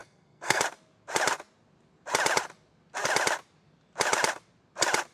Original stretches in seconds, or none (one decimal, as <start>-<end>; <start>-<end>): 0.6-5.1